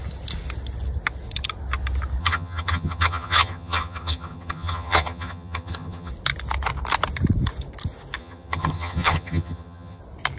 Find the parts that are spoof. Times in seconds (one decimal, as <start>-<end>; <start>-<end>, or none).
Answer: 2.2-6.1; 8.2-10.0